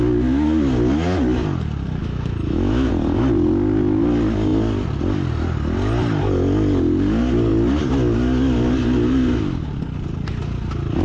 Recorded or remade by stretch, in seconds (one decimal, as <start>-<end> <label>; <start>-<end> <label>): 0.0-2.0 recorded; 2.0-2.9 remade; 2.9-11.0 recorded